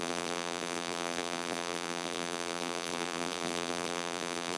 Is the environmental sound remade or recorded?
remade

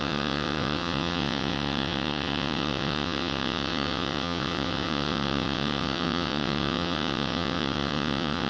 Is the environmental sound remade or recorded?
remade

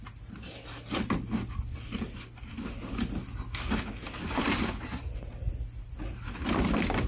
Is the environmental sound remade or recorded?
recorded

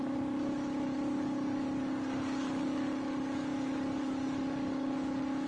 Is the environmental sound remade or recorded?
remade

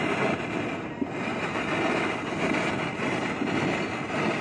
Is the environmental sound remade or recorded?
recorded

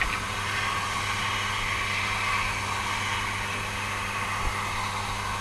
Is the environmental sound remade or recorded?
recorded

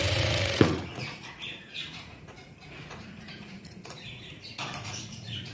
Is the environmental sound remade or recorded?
remade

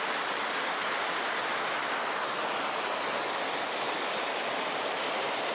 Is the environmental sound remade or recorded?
recorded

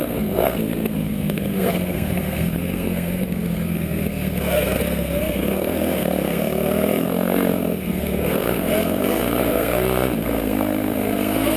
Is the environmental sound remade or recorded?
remade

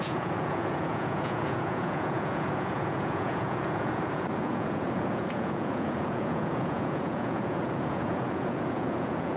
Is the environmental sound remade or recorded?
remade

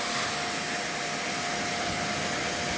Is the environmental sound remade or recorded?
recorded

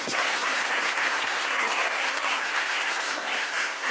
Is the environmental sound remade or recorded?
remade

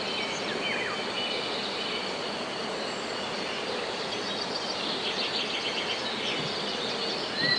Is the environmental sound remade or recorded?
recorded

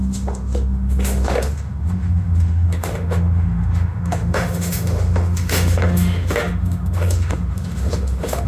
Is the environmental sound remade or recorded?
remade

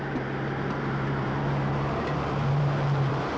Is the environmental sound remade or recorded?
remade